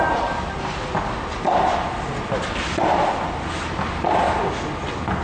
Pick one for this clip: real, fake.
real